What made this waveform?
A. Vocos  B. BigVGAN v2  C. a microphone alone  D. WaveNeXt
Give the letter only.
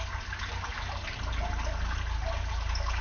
C